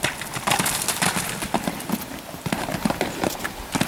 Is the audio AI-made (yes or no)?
no